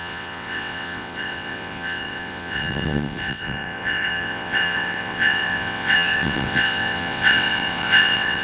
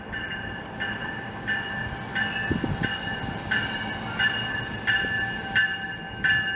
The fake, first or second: first